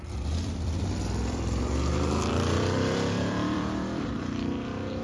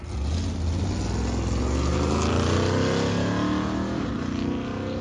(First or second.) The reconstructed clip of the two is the first